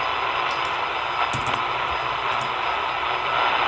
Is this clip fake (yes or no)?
no